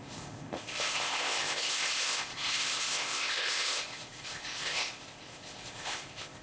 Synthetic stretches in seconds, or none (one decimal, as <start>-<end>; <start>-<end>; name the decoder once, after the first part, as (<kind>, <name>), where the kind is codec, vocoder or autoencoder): 0.0-6.4 (codec, ZipCodec)

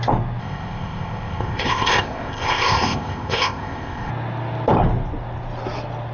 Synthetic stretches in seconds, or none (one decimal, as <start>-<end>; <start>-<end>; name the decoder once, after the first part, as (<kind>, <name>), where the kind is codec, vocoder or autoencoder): 0.4-4.1 (codec, ZipCodec)